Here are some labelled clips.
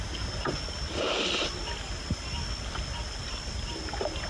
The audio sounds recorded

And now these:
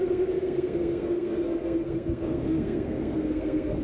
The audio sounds remade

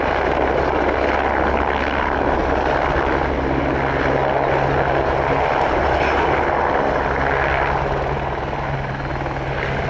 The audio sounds recorded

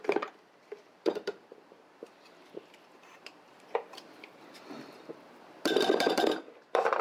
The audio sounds remade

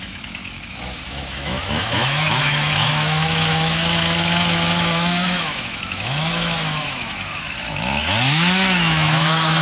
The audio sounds remade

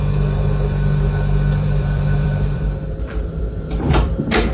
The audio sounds remade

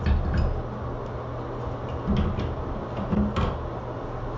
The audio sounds recorded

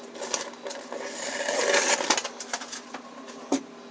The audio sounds recorded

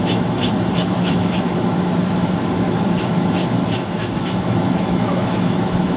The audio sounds remade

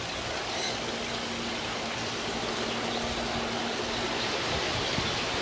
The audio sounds recorded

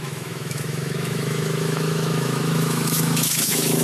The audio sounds remade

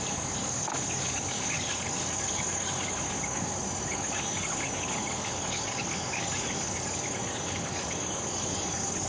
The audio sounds remade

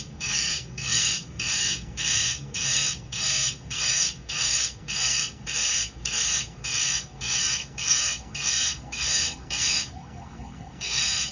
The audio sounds remade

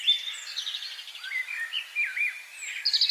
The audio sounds recorded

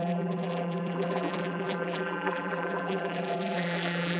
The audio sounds remade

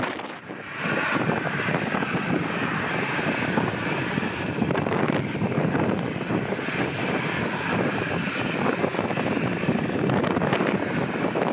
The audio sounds recorded